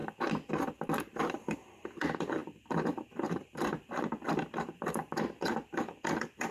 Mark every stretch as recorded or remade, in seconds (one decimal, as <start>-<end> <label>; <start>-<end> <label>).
0.0-1.0 recorded; 1.0-6.5 remade